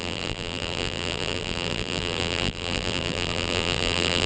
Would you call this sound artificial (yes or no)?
yes